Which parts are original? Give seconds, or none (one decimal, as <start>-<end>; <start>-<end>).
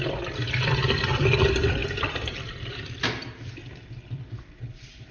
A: none